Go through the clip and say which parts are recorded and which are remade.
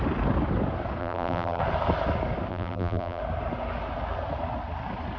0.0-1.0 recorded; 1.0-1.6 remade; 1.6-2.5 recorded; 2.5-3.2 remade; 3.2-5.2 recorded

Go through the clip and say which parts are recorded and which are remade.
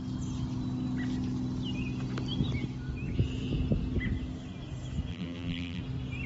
0.0-5.1 recorded; 5.1-5.8 remade; 5.8-6.3 recorded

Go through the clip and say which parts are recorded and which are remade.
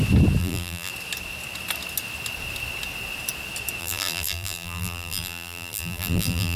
0.0-0.4 recorded; 0.4-0.9 remade; 0.9-3.8 recorded; 3.8-6.6 remade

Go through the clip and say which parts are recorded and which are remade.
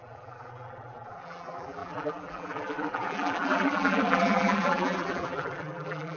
0.0-6.2 remade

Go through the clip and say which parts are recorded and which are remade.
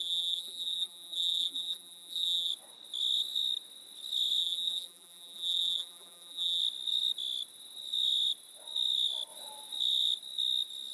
0.0-2.5 remade; 2.5-4.4 recorded; 4.4-6.6 remade; 6.6-10.9 recorded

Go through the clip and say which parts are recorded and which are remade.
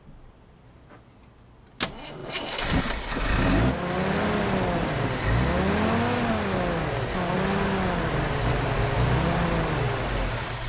0.0-2.2 recorded; 2.2-2.8 remade; 2.8-10.7 recorded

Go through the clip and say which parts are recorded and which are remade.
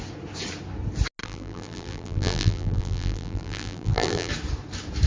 0.0-1.2 recorded; 1.2-4.3 remade; 4.3-5.1 recorded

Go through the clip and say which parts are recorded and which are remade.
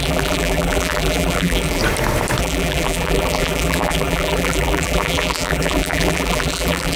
0.0-1.8 remade; 1.8-2.4 recorded; 2.4-7.0 remade